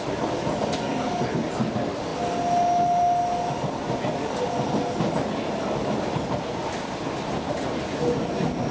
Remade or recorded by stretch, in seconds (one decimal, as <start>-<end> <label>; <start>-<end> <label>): 0.0-8.7 recorded

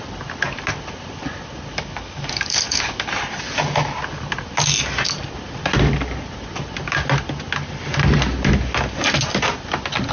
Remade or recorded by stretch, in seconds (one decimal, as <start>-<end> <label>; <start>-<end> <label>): 0.0-1.7 recorded; 1.7-3.1 remade; 3.1-10.1 recorded

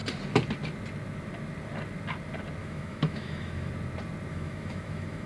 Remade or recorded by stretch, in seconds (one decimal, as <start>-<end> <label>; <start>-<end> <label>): 0.0-2.6 recorded; 2.6-3.7 remade; 3.7-4.3 recorded; 4.3-5.3 remade

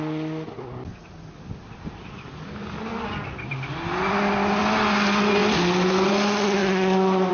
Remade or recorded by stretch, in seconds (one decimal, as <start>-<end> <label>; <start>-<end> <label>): 0.0-7.3 recorded

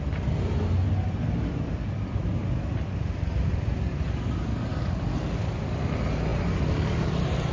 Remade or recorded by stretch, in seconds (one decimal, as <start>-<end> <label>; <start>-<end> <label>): 0.0-7.5 recorded

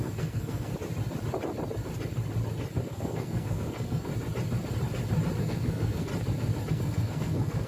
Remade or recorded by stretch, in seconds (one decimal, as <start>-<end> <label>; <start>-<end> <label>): 0.0-0.7 remade; 0.7-2.8 recorded; 2.8-4.1 remade; 4.1-5.4 recorded; 5.4-6.1 remade; 6.1-6.7 recorded; 6.7-7.7 remade

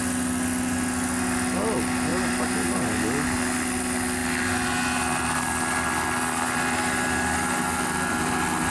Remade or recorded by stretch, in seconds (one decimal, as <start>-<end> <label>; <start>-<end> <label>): 0.0-2.1 recorded; 2.1-2.7 remade; 2.7-8.7 recorded